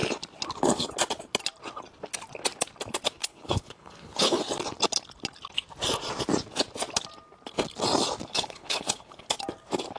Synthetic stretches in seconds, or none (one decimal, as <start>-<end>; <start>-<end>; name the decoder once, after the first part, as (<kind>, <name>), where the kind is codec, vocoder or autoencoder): 3.2-4.4 (codec, HILCodec); 8.3-9.3